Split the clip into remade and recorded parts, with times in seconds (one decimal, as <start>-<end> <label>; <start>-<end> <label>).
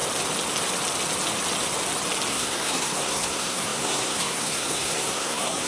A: 0.0-2.3 recorded; 2.3-5.7 remade